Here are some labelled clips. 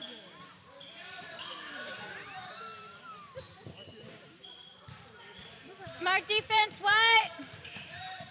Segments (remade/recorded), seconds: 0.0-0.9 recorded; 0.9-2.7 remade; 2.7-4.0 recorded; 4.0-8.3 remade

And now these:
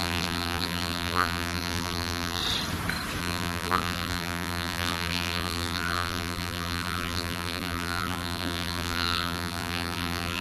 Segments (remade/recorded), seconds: 0.0-2.4 remade; 2.4-3.2 recorded; 3.2-10.4 remade

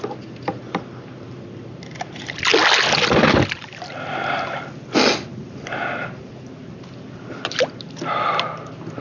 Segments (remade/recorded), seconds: 0.0-9.0 recorded

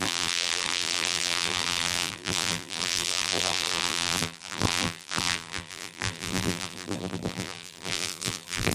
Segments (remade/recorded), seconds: 0.0-8.7 remade

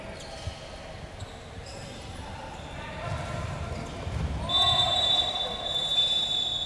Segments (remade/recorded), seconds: 0.0-1.7 recorded; 1.7-3.7 remade; 3.7-6.7 recorded